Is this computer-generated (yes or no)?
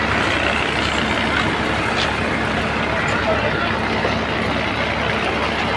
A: no